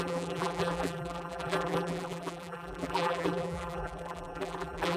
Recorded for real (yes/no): no